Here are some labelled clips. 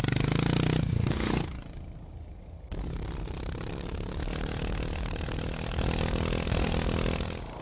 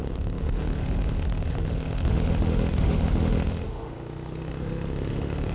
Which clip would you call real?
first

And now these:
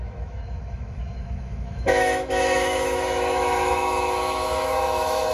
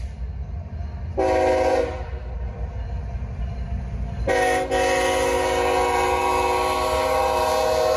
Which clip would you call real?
second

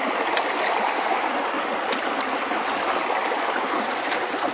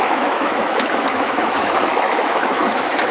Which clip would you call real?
first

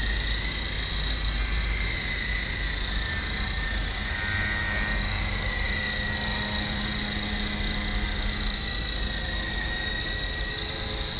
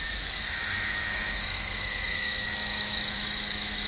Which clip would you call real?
first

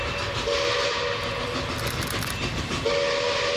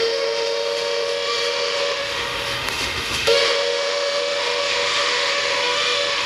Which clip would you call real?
first